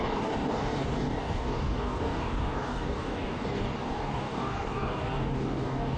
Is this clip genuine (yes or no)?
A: no